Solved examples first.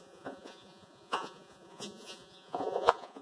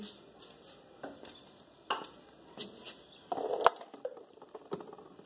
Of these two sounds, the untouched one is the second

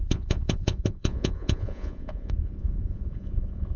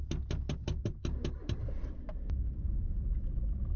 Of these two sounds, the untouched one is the second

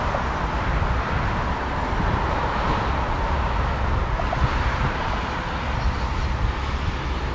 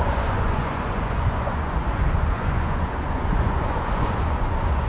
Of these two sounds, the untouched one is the first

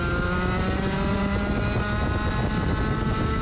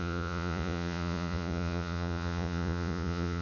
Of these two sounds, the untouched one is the first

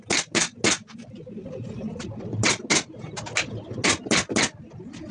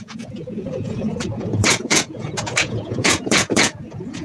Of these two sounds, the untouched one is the first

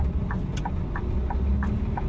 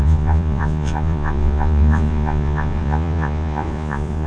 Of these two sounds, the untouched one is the first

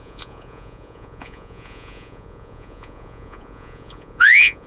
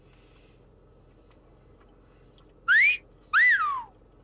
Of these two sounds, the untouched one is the second